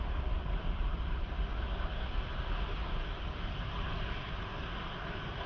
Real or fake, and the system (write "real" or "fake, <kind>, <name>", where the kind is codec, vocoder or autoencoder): real